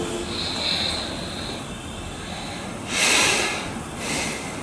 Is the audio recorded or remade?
recorded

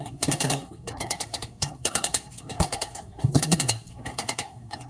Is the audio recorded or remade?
remade